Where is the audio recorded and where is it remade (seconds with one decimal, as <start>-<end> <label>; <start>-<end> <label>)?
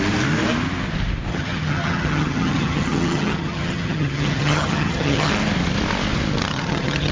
0.0-1.3 recorded; 1.3-5.3 remade; 5.3-6.5 recorded; 6.5-7.1 remade